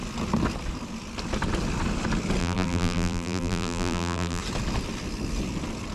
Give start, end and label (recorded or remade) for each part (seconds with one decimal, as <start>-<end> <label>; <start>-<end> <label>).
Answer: 0.0-2.4 recorded; 2.4-4.4 remade; 4.4-5.9 recorded